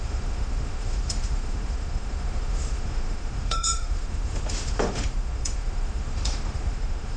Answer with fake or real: fake